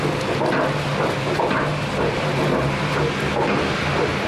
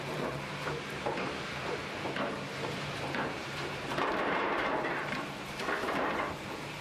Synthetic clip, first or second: second